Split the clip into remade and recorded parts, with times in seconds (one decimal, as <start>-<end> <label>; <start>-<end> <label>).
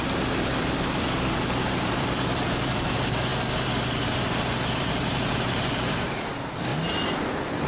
0.0-3.3 remade; 3.3-3.9 recorded; 3.9-6.7 remade; 6.7-7.7 recorded